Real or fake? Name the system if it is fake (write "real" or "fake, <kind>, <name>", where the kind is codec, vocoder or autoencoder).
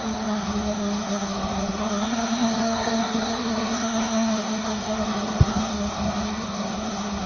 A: fake, codec, SNAC